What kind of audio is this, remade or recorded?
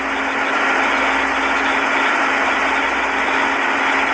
recorded